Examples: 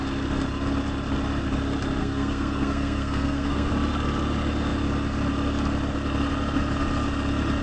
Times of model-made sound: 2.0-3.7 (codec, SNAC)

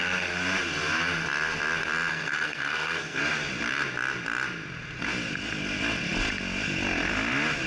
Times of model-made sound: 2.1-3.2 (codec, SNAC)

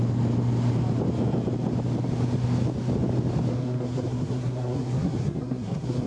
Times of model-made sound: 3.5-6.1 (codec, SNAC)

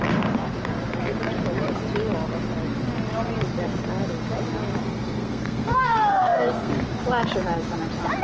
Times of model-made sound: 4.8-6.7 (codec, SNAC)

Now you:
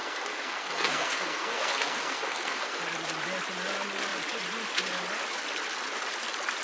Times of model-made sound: 0.0-2.8 (codec, SNAC)

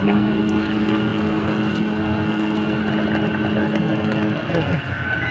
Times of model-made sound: 0.0-2.8 (codec, SNAC); 3.6-5.3

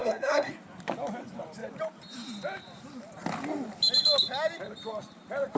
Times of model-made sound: 0.0-0.5 (codec, SNAC)

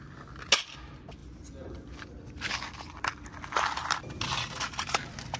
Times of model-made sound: none